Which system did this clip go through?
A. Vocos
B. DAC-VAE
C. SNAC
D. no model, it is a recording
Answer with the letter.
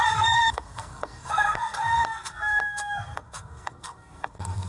C